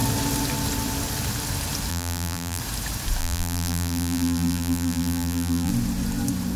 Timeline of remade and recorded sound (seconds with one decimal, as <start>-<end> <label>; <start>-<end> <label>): 0.0-1.9 recorded; 1.9-2.6 remade; 2.6-3.2 recorded; 3.2-5.7 remade; 5.7-6.6 recorded